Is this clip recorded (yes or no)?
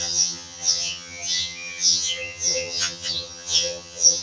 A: no